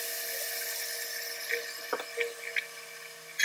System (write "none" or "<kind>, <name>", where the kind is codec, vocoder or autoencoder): none